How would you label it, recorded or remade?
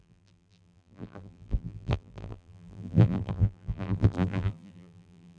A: remade